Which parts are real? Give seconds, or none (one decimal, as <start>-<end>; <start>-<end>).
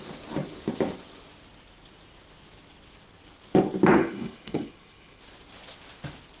0.0-4.0; 5.2-6.4